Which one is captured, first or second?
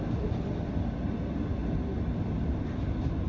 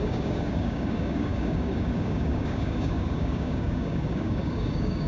first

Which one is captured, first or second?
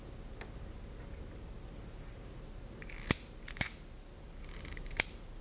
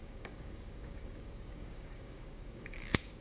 first